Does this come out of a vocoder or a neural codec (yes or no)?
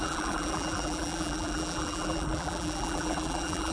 yes